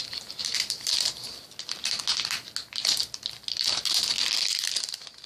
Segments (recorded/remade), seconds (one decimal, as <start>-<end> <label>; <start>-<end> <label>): 0.0-5.3 recorded